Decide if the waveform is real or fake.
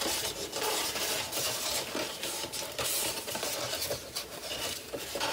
real